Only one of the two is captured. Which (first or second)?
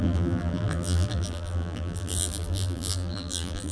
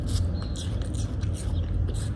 second